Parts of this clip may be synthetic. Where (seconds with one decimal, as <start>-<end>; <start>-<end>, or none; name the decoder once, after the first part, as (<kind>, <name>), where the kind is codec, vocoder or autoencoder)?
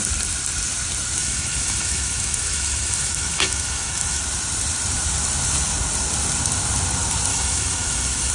1.2-4.2 (autoencoder, DAC-VAE); 7.3-8.3